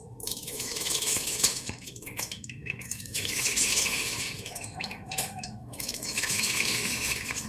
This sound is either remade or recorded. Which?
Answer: remade